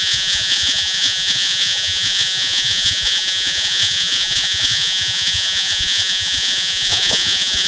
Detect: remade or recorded remade